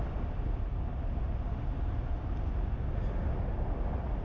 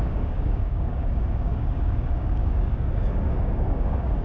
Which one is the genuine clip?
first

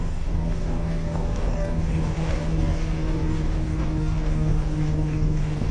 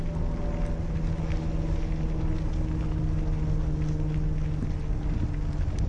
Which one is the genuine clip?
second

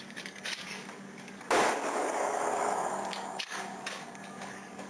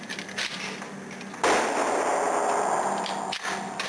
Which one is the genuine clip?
second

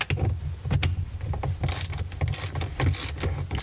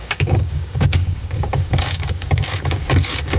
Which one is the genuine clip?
first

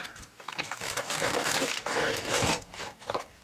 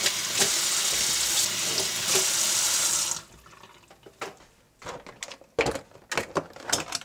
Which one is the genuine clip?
second